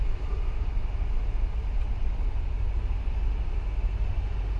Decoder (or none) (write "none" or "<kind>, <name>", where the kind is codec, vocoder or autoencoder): none